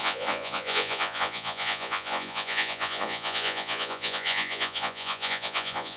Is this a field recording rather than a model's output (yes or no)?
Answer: no